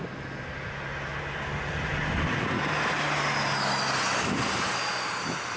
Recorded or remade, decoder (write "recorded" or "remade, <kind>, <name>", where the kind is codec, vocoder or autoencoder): recorded